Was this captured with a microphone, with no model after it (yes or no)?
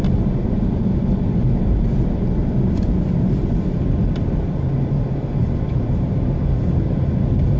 yes